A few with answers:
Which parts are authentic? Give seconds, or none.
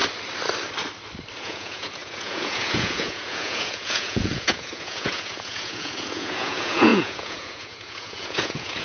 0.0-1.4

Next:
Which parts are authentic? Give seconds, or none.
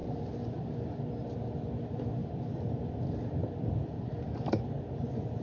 1.1-2.2; 2.8-3.4; 4.7-5.4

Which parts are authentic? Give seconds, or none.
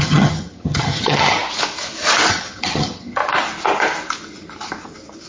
1.4-2.3; 3.2-5.3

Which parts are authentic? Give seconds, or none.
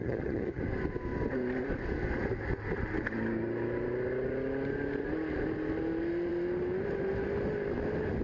0.6-8.2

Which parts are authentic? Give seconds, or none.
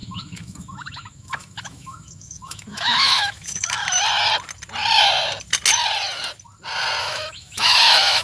3.8-7.0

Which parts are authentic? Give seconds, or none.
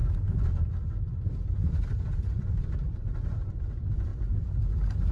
0.0-1.1; 3.5-5.1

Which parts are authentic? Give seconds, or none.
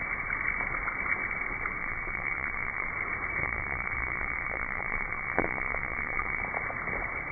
0.0-1.8; 2.9-3.4; 6.4-7.3